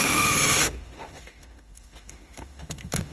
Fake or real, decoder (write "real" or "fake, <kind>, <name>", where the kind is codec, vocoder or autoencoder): fake, autoencoder, DAC-VAE